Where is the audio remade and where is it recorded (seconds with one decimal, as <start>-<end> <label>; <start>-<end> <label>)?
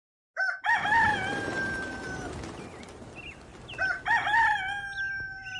0.0-5.6 recorded